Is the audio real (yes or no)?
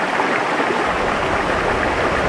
yes